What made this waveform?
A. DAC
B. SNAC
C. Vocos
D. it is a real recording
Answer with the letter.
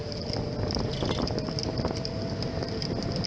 D